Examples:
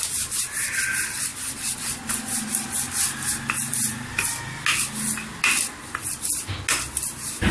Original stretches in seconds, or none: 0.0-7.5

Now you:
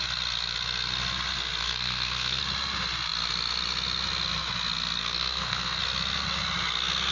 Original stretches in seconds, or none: 0.0-1.6; 2.4-5.0; 5.8-7.1